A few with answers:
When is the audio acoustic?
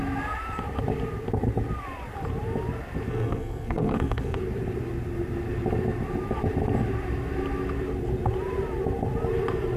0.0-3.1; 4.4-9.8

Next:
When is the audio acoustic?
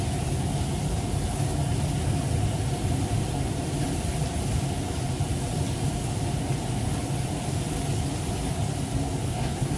0.0-9.3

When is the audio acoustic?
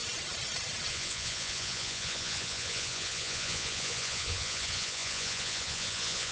0.0-0.9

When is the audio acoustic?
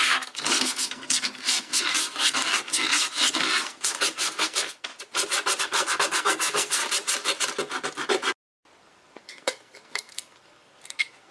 4.9-5.6; 6.8-8.8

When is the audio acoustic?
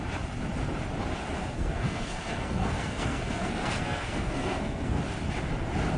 0.0-1.4; 5.0-6.0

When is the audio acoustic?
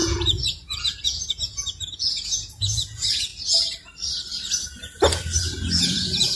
3.3-5.8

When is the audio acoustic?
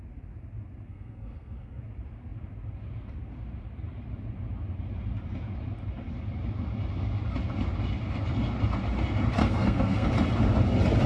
0.0-0.9; 1.8-9.4; 10.1-11.1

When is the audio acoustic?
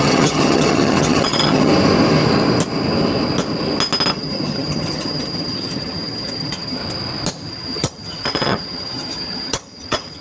1.7-4.1; 6.8-7.5